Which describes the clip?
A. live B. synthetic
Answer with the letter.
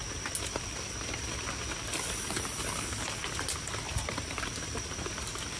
A